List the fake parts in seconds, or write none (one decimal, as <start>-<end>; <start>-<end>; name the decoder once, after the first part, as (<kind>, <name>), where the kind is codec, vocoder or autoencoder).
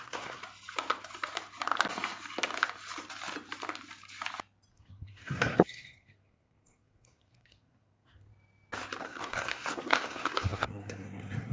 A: 0.0-0.4 (codec, SNAC); 4.7-8.3; 9.0-11.5